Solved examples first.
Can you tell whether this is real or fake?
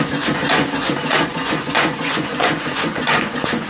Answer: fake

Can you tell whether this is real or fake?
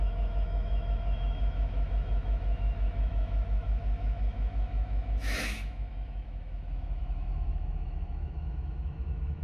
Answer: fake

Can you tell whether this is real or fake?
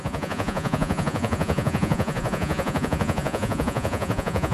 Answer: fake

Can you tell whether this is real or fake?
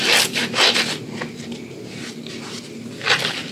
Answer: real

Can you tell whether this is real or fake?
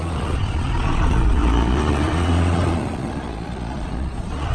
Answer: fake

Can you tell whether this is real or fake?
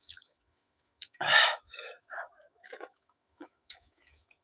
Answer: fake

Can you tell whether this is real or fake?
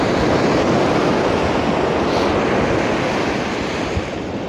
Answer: real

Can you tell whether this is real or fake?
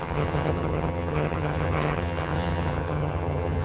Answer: fake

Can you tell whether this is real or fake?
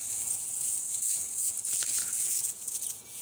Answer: fake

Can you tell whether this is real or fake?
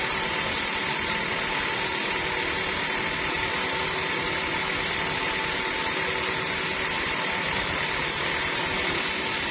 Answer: real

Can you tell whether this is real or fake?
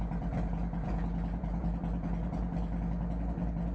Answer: real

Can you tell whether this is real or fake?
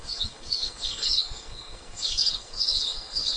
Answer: fake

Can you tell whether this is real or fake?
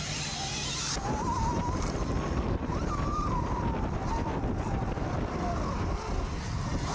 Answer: real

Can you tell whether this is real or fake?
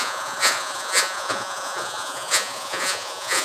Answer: fake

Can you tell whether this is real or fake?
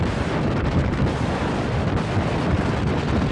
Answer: fake